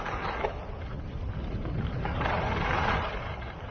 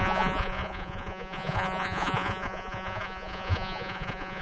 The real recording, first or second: first